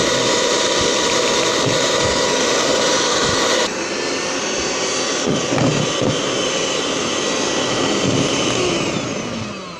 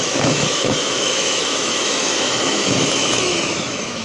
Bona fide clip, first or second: first